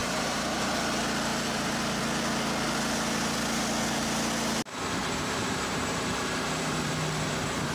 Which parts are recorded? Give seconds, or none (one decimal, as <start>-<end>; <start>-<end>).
0.6-1.3; 2.0-5.0; 6.9-7.7